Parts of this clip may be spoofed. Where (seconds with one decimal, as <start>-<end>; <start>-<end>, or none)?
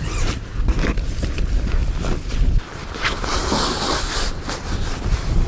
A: 0.0-0.5; 1.1-1.8; 5.0-5.5